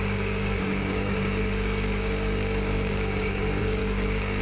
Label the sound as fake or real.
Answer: fake